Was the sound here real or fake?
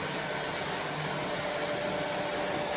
real